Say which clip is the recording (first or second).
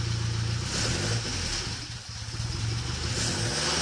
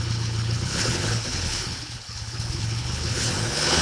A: first